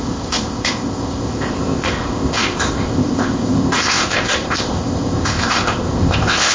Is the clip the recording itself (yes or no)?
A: no